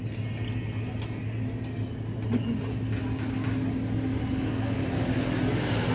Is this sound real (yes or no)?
yes